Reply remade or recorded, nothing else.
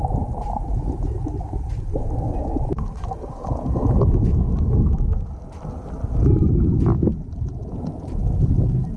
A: recorded